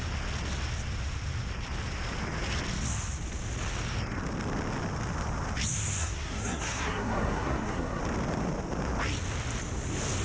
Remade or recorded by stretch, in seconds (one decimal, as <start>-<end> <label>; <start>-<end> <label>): 0.0-6.0 recorded; 6.0-8.0 remade; 8.0-10.2 recorded